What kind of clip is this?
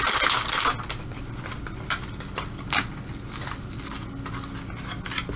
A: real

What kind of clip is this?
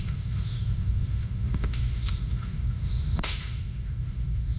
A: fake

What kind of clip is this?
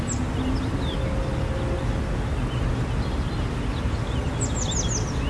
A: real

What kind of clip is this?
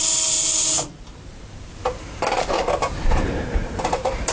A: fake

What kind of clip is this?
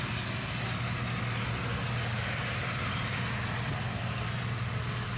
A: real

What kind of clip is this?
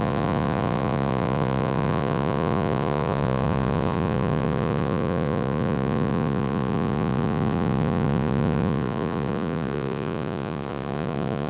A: fake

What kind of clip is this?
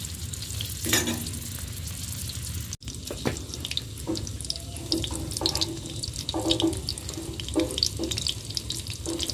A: real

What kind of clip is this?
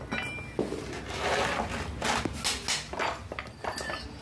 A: real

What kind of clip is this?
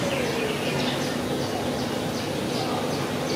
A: real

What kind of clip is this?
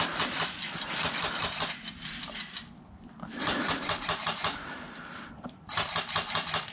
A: real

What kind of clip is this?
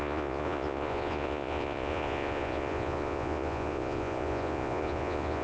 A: fake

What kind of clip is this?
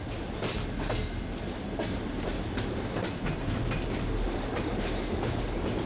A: real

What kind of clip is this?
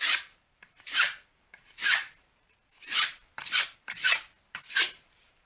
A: fake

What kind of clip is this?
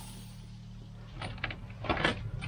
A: real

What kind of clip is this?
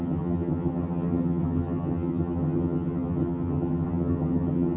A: fake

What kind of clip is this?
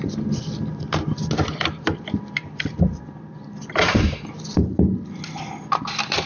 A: real